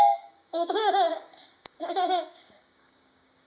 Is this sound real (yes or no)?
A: no